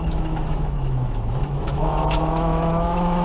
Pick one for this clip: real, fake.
fake